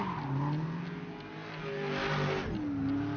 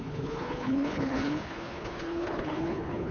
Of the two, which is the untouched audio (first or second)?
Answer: first